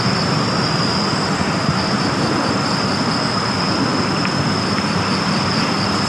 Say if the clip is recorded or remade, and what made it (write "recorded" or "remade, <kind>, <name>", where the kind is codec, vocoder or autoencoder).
recorded